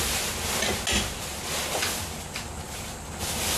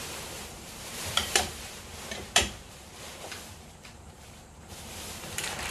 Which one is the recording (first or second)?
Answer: first